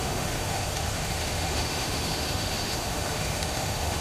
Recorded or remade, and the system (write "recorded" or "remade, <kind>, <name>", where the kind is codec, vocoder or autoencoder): remade, autoencoder, DAC-VAE